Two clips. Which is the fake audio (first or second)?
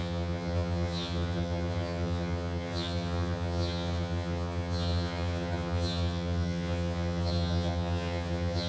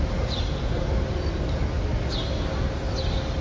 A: first